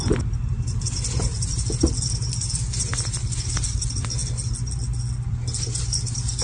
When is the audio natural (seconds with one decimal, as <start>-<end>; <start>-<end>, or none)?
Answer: 0.0-6.4